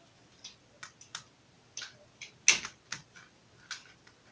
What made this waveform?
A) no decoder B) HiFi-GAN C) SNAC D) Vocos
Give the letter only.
A